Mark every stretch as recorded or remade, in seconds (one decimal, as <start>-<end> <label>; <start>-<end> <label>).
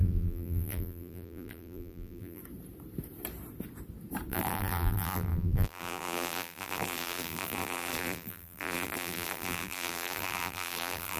0.0-2.4 remade; 2.4-4.3 recorded; 4.3-11.2 remade